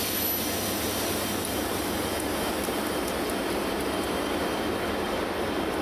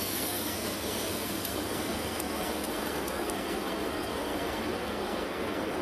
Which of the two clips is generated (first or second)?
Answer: second